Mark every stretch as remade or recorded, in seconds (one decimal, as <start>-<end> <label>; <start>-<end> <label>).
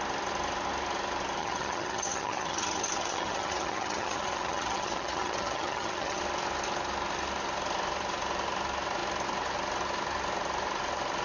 0.0-1.4 recorded; 1.4-6.2 remade; 6.2-11.2 recorded